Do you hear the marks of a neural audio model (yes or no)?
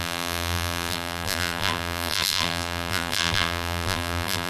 yes